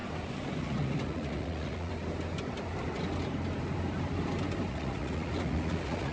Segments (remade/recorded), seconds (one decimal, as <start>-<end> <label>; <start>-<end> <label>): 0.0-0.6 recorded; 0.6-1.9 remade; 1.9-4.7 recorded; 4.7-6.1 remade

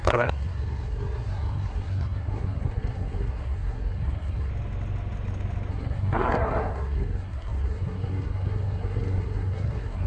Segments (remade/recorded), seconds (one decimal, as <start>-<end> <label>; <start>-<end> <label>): 0.0-4.5 remade; 4.5-5.7 recorded; 5.7-10.1 remade

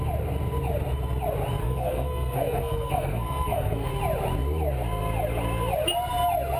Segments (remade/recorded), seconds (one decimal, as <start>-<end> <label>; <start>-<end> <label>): 0.0-1.6 recorded; 1.6-3.9 remade; 3.9-6.6 recorded

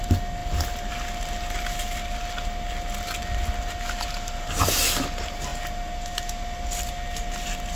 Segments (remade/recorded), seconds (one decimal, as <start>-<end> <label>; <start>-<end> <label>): 0.0-7.8 recorded

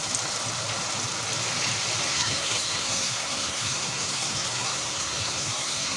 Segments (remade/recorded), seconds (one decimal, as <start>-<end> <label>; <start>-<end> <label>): 0.0-2.1 recorded; 2.1-6.0 remade

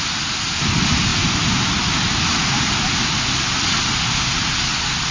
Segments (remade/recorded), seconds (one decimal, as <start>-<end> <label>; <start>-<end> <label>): 0.0-5.1 recorded